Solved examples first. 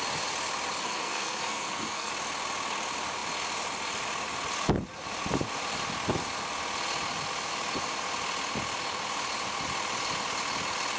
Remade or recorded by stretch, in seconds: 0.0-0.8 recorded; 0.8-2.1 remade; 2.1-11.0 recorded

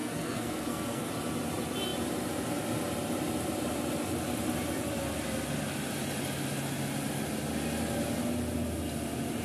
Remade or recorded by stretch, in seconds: 0.0-1.1 remade; 1.1-9.4 recorded

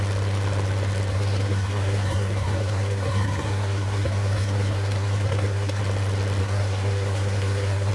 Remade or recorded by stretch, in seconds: 0.0-1.1 recorded; 1.1-5.8 remade; 5.8-6.4 recorded; 6.4-7.9 remade